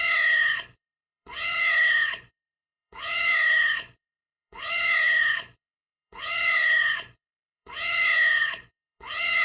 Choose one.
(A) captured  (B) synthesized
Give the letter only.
B